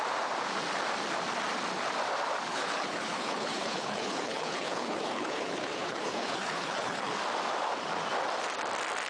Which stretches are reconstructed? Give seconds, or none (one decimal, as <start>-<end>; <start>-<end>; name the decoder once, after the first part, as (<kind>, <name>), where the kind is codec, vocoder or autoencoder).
2.5-7.1 (codec, HILCodec)